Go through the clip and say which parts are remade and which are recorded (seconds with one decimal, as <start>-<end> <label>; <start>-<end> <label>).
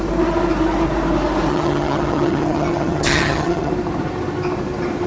0.0-1.5 recorded; 1.5-3.7 remade; 3.7-5.1 recorded